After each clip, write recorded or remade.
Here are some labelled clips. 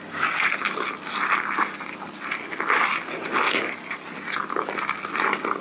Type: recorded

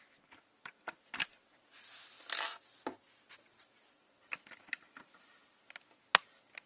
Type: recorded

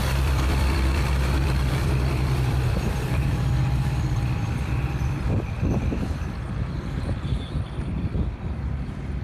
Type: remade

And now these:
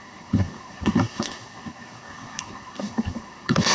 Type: remade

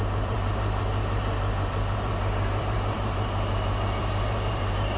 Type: remade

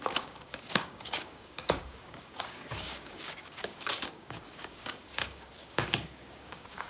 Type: remade